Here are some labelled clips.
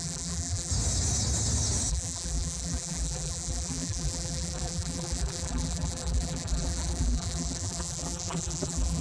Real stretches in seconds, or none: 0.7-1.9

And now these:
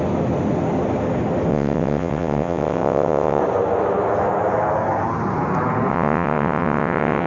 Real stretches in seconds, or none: 0.0-1.5; 3.4-5.9

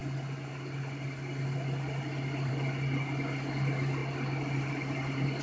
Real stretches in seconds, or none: 0.0-4.0

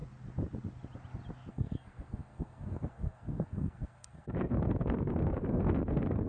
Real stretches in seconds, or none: 0.0-1.5

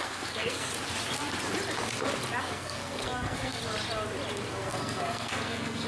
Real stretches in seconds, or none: 0.7-2.4; 3.6-4.5

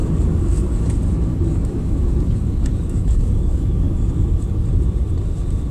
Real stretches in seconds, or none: 0.8-1.3; 4.7-5.7

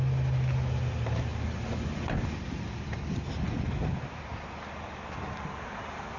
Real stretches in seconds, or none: 0.0-6.2